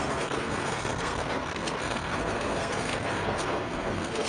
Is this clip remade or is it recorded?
remade